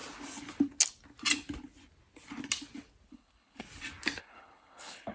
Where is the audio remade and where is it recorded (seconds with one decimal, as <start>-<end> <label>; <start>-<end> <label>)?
0.0-3.1 recorded; 3.1-3.6 remade; 3.6-4.2 recorded; 4.2-5.1 remade